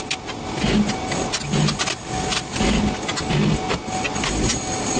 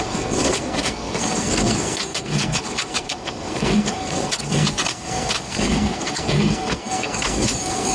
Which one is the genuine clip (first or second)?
first